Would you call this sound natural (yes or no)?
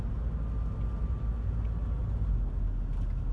yes